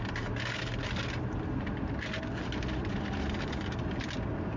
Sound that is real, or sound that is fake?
real